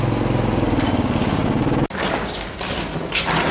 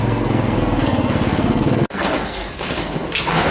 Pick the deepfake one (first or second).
second